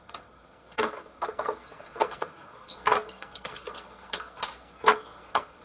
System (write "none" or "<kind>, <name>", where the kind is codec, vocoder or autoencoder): codec, SNAC